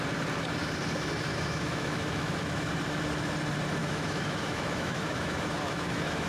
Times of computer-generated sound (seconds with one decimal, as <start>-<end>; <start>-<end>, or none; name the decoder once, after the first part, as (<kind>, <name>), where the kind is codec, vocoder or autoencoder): 1.3-2.7 (autoencoder, DAC-VAE); 3.8-6.3